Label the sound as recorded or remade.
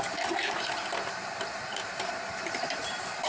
remade